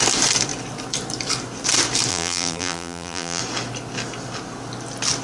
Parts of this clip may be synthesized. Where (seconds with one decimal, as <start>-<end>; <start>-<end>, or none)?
2.1-3.4

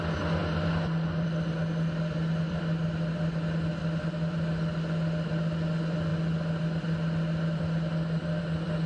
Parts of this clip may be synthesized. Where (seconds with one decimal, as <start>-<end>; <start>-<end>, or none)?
none

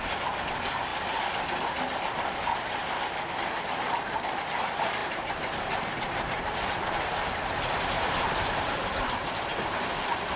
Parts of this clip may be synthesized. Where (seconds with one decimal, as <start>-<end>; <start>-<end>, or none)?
5.0-9.3

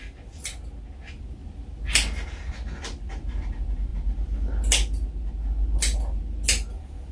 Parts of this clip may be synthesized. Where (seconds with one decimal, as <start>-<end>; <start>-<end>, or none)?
none

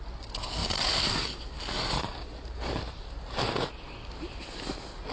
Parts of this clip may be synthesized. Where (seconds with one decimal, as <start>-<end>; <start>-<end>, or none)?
0.6-3.7

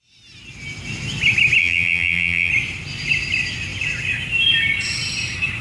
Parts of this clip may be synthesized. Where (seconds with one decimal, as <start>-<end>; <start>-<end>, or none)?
1.6-2.5

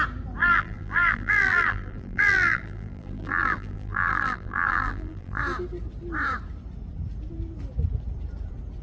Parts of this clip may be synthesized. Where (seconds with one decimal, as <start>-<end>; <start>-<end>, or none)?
0.4-5.4

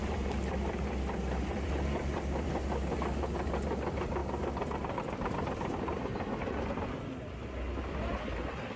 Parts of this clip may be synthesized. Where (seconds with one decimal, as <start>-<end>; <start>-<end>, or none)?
0.0-6.1